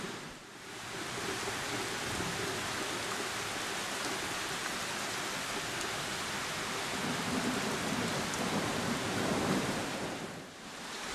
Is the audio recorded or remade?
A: recorded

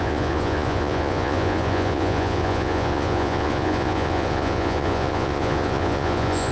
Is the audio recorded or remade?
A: remade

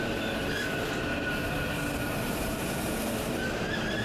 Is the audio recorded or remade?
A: recorded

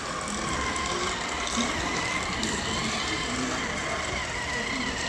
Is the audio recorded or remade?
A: recorded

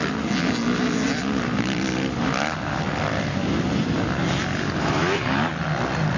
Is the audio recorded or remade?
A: recorded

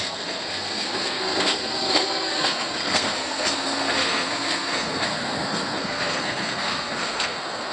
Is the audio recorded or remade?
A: remade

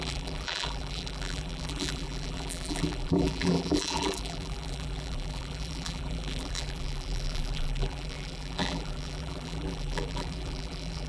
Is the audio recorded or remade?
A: remade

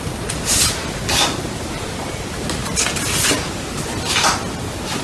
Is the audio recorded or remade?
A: recorded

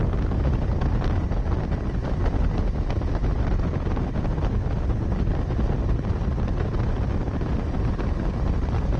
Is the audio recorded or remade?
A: recorded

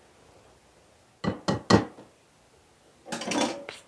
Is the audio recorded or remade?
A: recorded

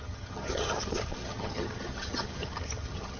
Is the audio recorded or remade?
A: remade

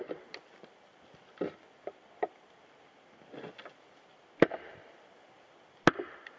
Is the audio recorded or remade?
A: recorded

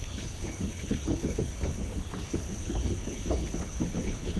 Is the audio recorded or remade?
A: remade